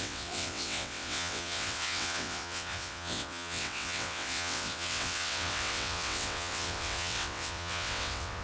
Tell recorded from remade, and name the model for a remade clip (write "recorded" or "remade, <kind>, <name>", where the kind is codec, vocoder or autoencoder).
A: remade, vocoder, WaveNeXt